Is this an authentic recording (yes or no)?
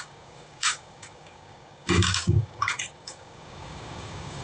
no